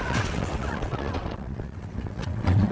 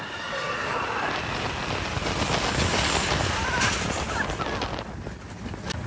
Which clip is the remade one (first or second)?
first